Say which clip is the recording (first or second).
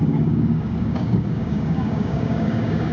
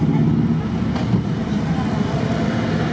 second